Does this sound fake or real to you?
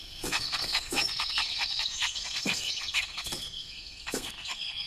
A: fake